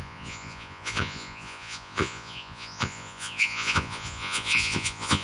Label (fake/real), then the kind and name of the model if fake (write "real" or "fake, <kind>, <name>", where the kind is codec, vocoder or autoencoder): fake, vocoder, Vocos